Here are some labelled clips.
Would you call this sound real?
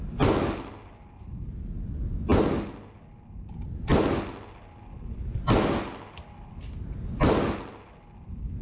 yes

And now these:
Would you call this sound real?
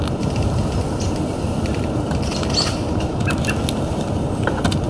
yes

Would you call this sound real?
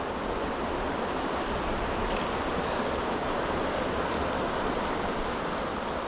yes